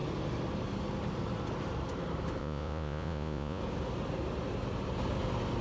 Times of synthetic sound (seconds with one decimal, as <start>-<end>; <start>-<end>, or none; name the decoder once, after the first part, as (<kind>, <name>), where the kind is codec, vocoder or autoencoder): 2.4-3.6 (vocoder, Vocos)